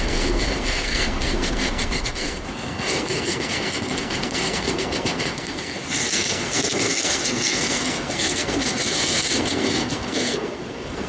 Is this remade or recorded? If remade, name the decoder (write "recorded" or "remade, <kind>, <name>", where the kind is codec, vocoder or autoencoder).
remade, codec, SNAC